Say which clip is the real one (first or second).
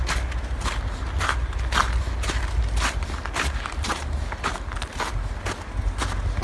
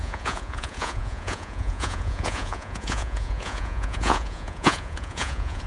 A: first